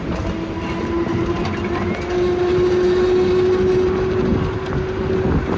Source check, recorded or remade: recorded